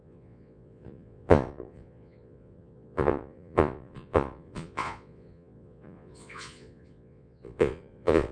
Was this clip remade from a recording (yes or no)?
yes